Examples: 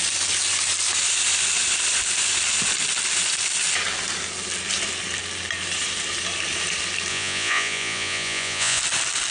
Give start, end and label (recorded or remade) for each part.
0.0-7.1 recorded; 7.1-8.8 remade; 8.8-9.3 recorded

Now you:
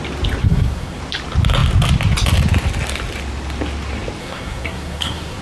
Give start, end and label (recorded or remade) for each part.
0.0-0.4 recorded; 0.4-1.0 remade; 1.0-4.2 recorded; 4.2-5.4 remade